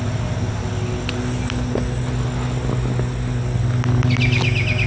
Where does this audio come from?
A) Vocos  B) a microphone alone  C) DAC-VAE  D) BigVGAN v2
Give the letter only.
B